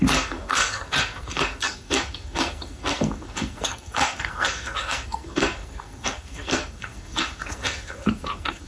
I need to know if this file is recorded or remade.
remade